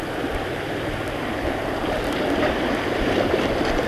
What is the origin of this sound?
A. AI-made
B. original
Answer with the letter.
B